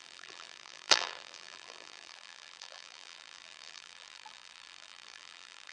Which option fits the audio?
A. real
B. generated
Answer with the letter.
B